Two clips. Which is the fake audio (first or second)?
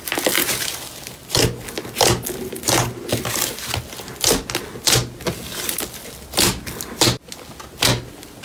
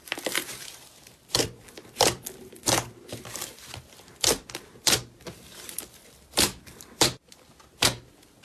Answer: second